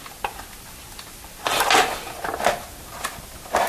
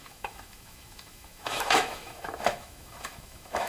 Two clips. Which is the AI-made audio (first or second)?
second